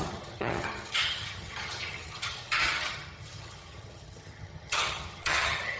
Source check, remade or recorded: remade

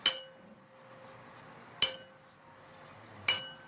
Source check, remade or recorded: recorded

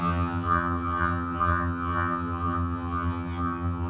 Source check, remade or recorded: remade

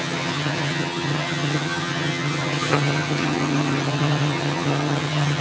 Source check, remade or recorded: remade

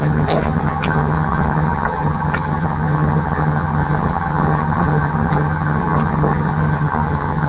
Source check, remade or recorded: remade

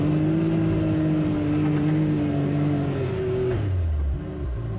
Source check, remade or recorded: recorded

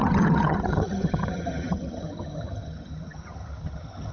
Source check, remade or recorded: remade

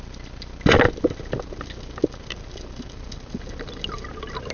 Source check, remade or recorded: recorded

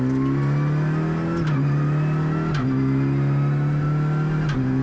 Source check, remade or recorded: recorded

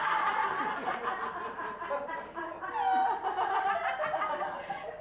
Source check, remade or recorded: recorded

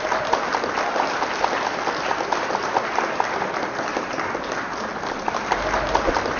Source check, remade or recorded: recorded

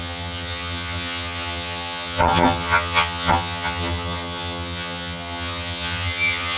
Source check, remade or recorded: remade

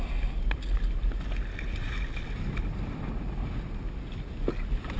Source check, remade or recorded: recorded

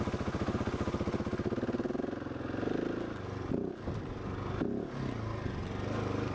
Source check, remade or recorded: recorded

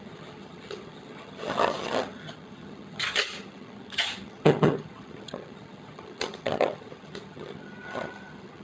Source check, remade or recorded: remade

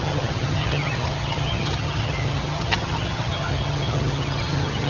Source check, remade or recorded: remade